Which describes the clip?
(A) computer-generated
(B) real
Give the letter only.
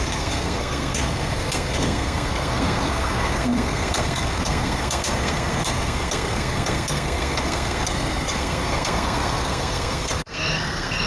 A